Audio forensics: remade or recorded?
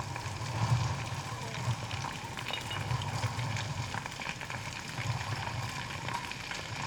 remade